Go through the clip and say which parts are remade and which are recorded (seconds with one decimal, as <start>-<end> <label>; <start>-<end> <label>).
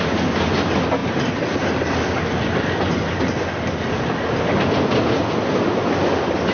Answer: 0.0-6.5 recorded